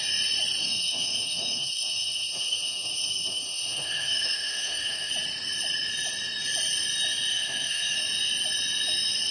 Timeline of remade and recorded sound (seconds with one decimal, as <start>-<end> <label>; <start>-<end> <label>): 0.0-0.6 recorded; 0.6-5.1 remade; 5.1-7.3 recorded; 7.3-8.0 remade; 8.0-9.3 recorded